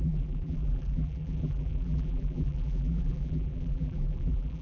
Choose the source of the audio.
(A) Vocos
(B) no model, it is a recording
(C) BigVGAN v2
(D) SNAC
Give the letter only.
C